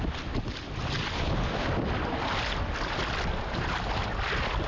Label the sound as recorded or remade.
recorded